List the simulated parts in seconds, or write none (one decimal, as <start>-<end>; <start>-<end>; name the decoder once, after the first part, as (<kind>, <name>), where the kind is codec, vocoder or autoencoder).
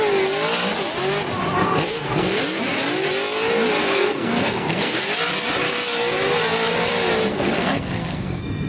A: 1.6-2.4 (codec, SNAC); 3.8-5.0; 7.3-8.7